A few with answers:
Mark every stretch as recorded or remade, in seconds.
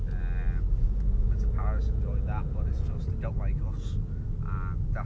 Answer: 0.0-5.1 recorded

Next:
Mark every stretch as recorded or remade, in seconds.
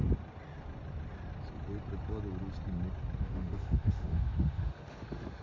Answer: 0.0-3.2 recorded; 3.2-5.4 remade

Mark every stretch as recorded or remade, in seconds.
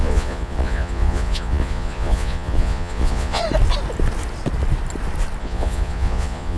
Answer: 0.0-3.4 remade; 3.4-5.4 recorded; 5.4-6.6 remade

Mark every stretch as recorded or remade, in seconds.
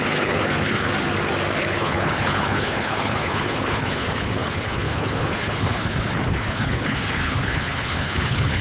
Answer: 0.0-0.9 remade; 0.9-1.6 recorded; 1.6-8.6 remade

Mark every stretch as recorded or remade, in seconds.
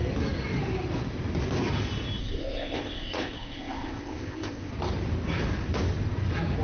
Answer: 0.0-2.2 recorded; 2.2-4.7 remade; 4.7-6.6 recorded